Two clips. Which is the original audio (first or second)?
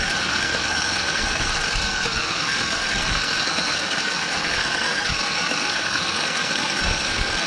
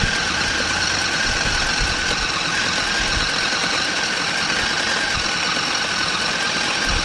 second